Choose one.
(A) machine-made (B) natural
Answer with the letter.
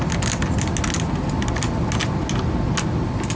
B